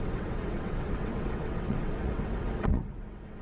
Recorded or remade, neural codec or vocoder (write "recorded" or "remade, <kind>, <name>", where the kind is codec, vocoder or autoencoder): remade, vocoder, WaveNeXt